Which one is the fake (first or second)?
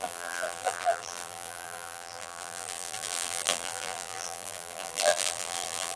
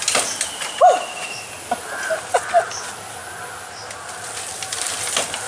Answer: first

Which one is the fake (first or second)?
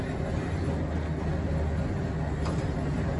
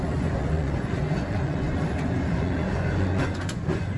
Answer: second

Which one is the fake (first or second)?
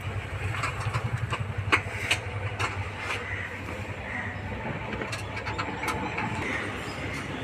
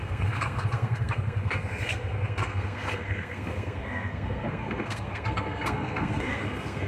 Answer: second